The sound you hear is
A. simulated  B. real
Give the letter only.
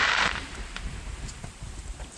A